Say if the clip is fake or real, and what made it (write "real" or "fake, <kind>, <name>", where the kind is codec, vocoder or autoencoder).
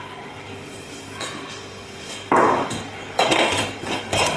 fake, codec, DAC